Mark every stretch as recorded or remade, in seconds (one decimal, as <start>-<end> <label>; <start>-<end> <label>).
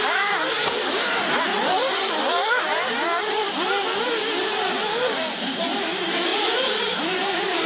0.0-1.5 remade; 1.5-5.6 recorded; 5.6-7.7 remade